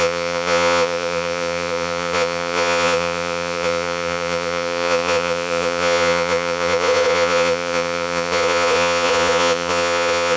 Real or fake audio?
fake